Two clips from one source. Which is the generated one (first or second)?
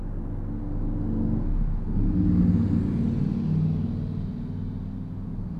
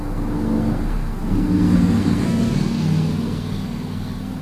second